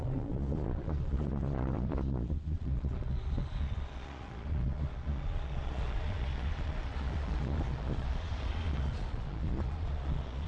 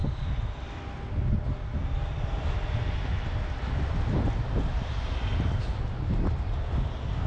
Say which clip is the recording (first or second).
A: second